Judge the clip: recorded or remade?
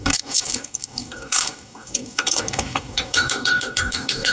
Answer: remade